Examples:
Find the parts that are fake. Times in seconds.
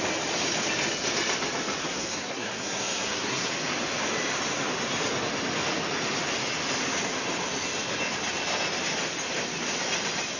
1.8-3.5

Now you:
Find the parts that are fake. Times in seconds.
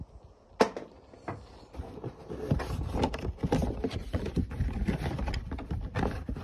2.4-6.4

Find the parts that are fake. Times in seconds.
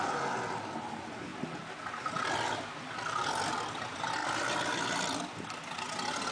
none